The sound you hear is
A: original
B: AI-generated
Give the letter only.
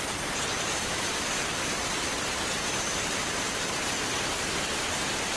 B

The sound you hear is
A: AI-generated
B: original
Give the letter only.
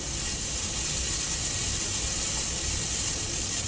A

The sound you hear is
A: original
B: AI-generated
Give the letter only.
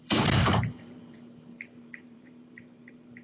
B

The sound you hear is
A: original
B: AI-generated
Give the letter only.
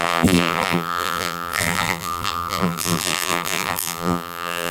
B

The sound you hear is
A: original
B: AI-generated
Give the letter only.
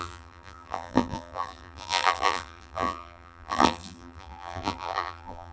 B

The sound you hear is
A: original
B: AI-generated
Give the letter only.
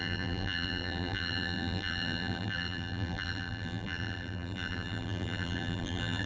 B